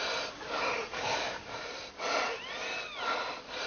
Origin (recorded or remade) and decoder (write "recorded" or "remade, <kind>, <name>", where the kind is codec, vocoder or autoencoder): recorded